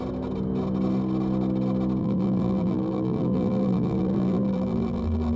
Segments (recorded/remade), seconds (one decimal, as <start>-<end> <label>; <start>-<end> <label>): 0.0-2.0 recorded; 2.0-5.4 remade